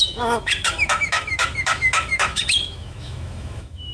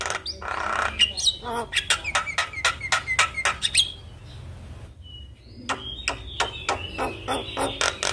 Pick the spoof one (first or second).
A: first